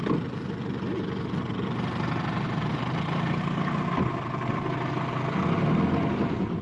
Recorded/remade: recorded